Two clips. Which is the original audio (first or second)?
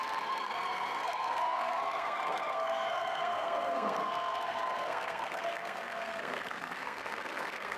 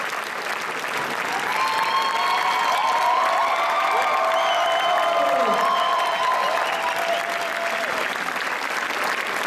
second